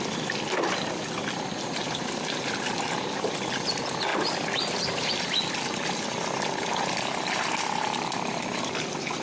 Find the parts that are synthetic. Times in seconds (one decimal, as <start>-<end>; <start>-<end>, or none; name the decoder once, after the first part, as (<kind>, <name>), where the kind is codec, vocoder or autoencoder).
none